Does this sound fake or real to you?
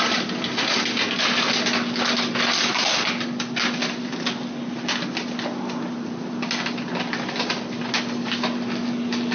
real